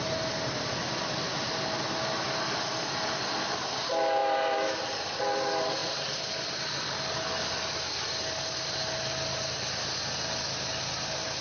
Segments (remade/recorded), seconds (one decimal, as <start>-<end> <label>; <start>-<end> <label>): 0.0-4.2 recorded; 4.2-5.2 remade; 5.2-5.8 recorded; 5.8-6.5 remade; 6.5-11.4 recorded